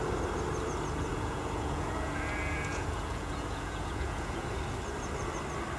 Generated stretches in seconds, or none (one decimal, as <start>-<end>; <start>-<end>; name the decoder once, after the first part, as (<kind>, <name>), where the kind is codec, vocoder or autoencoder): 1.1-4.6 (vocoder, Vocos)